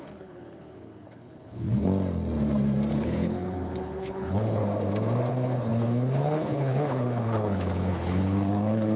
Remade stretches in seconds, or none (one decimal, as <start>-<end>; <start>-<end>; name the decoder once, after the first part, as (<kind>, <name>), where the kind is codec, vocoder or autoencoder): 0.0-1.9 (codec, HILCodec); 2.9-4.6; 5.3-9.0